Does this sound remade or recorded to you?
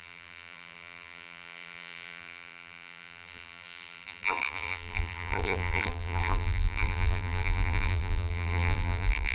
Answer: remade